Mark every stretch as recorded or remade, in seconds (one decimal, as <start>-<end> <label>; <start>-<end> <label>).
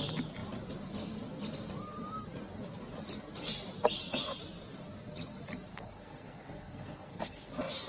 0.0-5.7 recorded; 5.7-7.5 remade; 7.5-7.9 recorded